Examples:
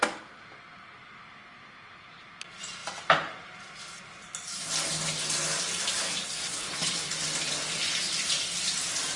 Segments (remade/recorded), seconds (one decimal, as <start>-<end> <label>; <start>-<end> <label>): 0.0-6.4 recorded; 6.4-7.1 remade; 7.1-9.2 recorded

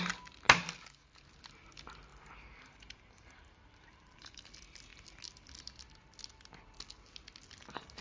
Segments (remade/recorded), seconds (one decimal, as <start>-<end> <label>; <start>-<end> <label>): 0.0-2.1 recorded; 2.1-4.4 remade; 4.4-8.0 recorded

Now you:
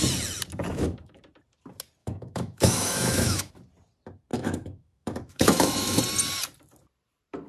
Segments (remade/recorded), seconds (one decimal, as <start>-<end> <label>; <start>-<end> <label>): 0.0-0.7 recorded; 0.7-1.2 remade; 1.2-2.0 recorded; 2.0-3.5 remade; 3.5-4.3 recorded; 4.3-6.0 remade; 6.0-7.5 recorded

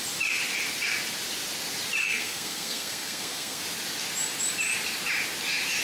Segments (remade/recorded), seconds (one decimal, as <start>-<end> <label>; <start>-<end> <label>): 0.0-2.0 recorded; 2.0-3.6 remade; 3.6-5.8 recorded

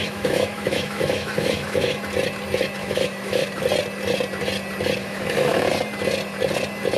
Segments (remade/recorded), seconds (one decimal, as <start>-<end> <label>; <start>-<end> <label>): 0.0-2.0 remade; 2.0-2.8 recorded; 2.8-3.5 remade; 3.5-5.0 recorded; 5.0-5.7 remade; 5.7-7.0 recorded